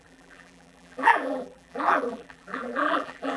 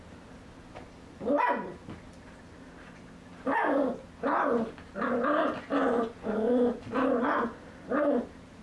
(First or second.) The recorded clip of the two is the second